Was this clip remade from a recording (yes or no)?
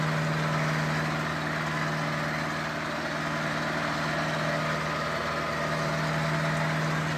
no